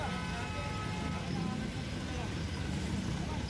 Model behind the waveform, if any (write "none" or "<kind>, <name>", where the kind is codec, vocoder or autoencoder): none